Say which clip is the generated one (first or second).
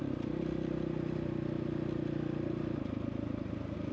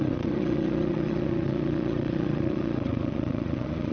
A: second